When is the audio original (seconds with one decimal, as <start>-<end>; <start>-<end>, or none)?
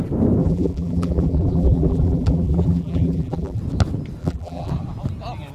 0.0-0.4; 3.6-4.2; 4.7-5.5